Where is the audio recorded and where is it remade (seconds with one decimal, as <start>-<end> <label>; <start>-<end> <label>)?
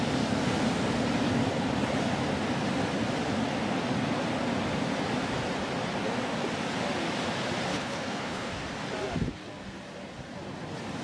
0.0-7.7 recorded; 7.7-8.5 remade; 8.5-11.0 recorded